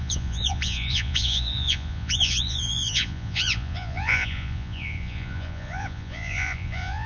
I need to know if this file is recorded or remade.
remade